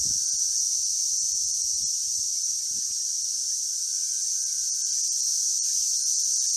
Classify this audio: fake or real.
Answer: real